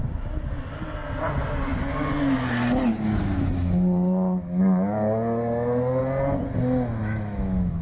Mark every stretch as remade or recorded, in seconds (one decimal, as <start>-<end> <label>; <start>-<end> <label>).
0.0-7.0 recorded; 7.0-7.8 remade